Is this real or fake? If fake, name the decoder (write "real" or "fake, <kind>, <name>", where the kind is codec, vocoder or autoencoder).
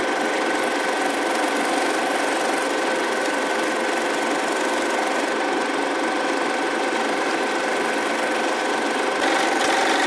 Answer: real